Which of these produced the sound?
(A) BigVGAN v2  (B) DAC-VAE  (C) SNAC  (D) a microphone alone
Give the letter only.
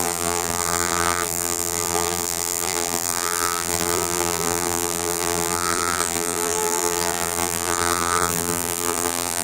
A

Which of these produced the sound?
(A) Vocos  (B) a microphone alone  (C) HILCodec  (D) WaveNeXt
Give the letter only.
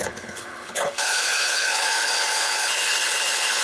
C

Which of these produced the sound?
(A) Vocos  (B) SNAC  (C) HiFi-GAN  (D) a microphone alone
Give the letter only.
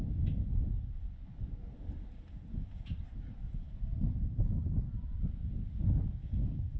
D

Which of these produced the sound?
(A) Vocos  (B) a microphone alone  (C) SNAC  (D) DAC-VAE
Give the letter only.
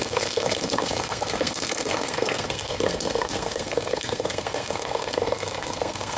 C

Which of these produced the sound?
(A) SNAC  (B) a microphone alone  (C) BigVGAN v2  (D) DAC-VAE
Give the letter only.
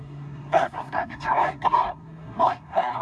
A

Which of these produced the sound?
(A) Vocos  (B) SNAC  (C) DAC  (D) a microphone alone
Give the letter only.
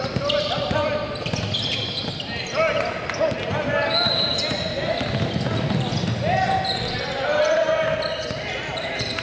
D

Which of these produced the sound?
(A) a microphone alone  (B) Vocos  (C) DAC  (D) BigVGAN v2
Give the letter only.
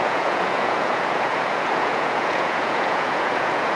B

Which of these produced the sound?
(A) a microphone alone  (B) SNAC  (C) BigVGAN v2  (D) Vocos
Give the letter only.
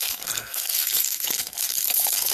B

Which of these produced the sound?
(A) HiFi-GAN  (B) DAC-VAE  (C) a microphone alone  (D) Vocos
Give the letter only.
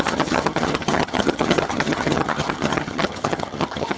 A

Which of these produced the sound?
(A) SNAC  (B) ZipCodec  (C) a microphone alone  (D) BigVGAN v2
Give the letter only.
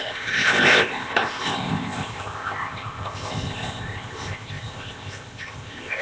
B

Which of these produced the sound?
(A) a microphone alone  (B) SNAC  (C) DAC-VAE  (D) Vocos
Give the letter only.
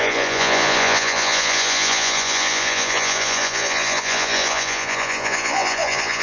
D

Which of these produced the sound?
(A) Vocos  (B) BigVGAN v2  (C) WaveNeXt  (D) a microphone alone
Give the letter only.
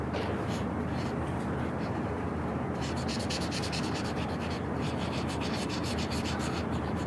B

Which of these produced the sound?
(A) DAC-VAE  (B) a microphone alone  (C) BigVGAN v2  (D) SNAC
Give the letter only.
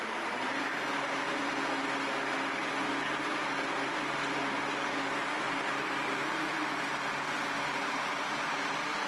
B